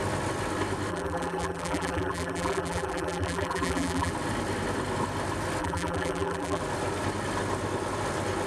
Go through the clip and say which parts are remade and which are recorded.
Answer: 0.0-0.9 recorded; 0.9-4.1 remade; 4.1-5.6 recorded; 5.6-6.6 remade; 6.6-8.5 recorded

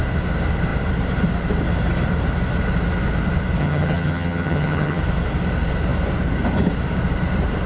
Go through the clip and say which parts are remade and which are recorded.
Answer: 0.0-3.6 recorded; 3.6-5.0 remade; 5.0-7.7 recorded

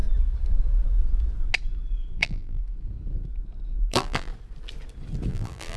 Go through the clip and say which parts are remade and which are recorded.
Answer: 0.0-2.2 recorded; 2.2-2.6 remade; 2.6-3.9 recorded; 3.9-4.3 remade; 4.3-5.3 recorded; 5.3-5.8 remade

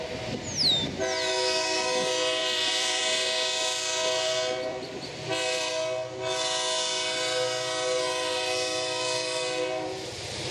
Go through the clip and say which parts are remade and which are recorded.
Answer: 0.0-2.4 recorded; 2.4-3.0 remade; 3.0-4.7 recorded; 4.7-5.7 remade; 5.7-10.5 recorded

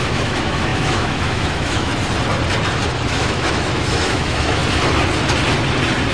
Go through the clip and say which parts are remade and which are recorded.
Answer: 0.0-1.9 remade; 1.9-3.1 recorded; 3.1-4.6 remade; 4.6-6.1 recorded

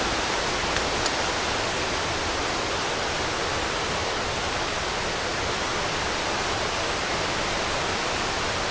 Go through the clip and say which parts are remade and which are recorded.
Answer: 0.0-8.7 recorded

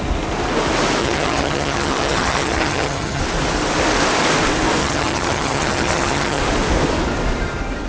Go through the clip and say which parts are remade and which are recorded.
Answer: 0.0-1.0 recorded; 1.0-3.2 remade; 3.2-4.8 recorded; 4.8-6.4 remade; 6.4-7.9 recorded

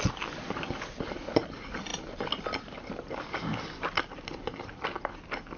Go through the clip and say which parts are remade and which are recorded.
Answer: 0.0-5.6 recorded